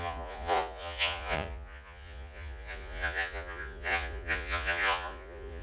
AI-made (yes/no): yes